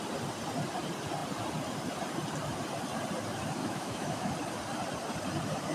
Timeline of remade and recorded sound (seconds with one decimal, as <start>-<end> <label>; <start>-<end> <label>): 0.0-3.6 recorded; 3.6-4.3 remade; 4.3-5.7 recorded